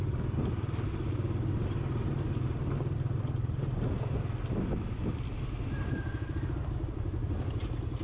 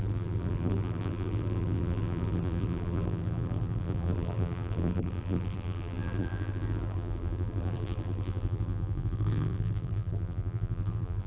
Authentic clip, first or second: first